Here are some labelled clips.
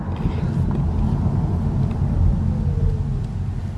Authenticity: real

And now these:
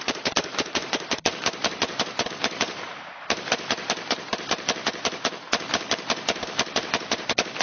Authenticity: fake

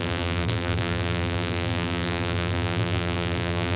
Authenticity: fake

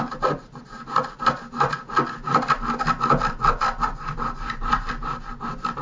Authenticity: real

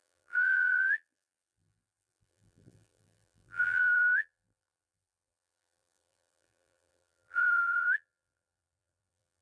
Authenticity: fake